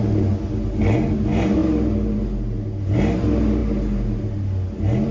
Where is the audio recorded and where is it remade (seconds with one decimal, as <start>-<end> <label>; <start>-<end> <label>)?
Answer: 0.0-5.1 recorded

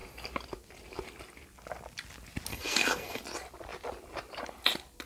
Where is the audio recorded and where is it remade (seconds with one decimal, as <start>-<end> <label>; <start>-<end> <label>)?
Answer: 0.0-2.5 recorded; 2.5-3.2 remade; 3.2-5.1 recorded